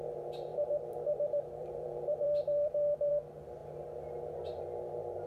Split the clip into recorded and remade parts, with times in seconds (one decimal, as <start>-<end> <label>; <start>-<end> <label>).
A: 0.0-0.5 recorded; 0.5-3.1 remade; 3.1-5.3 recorded

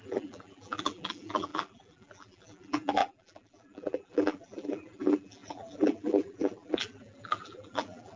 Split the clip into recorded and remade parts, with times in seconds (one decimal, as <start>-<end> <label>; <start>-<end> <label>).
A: 0.0-8.2 remade

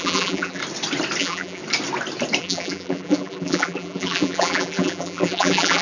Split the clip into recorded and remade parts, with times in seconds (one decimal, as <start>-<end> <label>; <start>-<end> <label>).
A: 0.0-0.6 remade; 0.6-1.2 recorded; 1.2-1.6 remade; 1.6-2.4 recorded; 2.4-5.8 remade